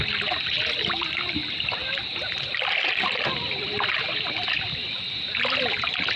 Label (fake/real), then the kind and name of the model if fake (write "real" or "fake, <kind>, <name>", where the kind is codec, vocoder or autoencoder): real